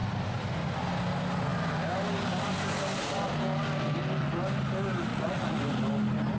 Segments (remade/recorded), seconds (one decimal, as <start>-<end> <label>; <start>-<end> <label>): 0.0-5.1 recorded; 5.1-5.6 remade; 5.6-6.4 recorded